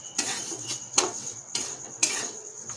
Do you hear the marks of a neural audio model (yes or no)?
yes